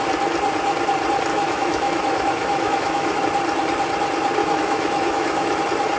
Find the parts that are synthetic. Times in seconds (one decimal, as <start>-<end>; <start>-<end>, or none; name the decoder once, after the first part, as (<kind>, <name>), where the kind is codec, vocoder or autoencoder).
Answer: 1.3-3.2 (autoencoder, DAC-VAE); 4.4-5.6